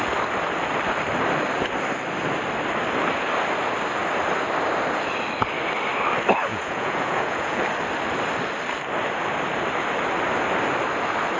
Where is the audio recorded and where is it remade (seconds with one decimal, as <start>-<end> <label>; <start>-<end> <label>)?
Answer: 0.0-6.5 recorded; 6.5-7.6 remade; 7.6-11.4 recorded